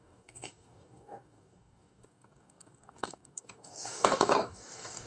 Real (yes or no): no